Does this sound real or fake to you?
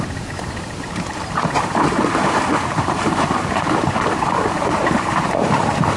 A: fake